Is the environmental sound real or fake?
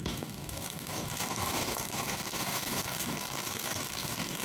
fake